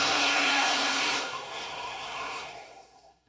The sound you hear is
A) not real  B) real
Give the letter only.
A